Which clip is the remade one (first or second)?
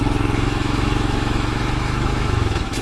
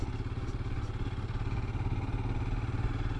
first